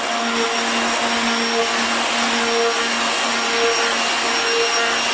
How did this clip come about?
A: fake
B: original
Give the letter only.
B